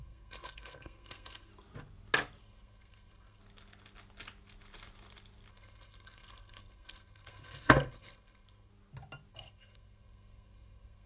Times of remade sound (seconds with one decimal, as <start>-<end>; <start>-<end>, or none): 0.0-1.5; 2.4-3.4; 5.5-8.7; 9.3-11.1